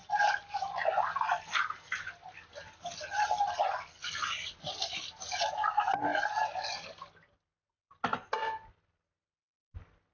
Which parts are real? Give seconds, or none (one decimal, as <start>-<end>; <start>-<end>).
0.7-10.1